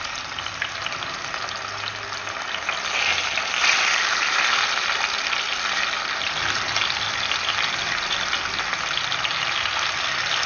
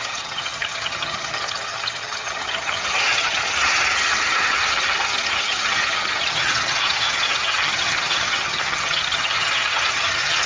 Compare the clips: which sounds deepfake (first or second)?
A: second